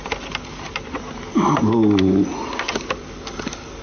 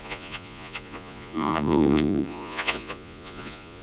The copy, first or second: second